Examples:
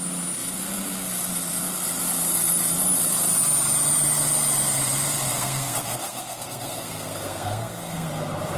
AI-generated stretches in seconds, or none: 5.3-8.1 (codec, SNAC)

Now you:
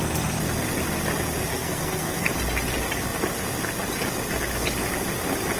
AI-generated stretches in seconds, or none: 1.5-2.3 (codec, SNAC)

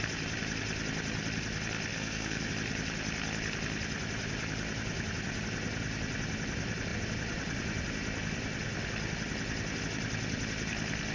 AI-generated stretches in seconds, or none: 1.9-2.5 (codec, SNAC)

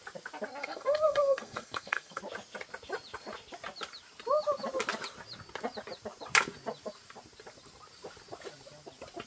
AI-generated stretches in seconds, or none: 0.6-2.2 (codec, SNAC)

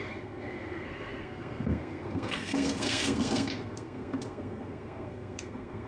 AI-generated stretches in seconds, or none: 0.0-5.9 (codec, SNAC)